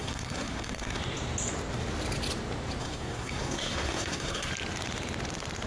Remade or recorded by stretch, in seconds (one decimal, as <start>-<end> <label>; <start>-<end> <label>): 0.0-1.0 remade; 1.0-2.8 recorded; 2.8-4.5 remade; 4.5-5.7 recorded